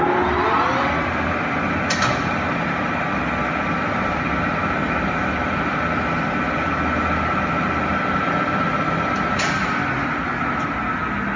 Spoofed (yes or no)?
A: no